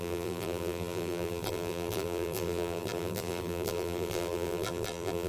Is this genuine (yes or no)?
no